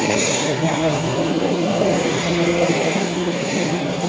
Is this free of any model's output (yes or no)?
no